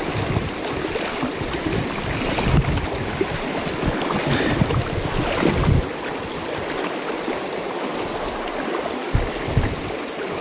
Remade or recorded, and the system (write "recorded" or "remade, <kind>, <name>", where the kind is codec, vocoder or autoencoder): recorded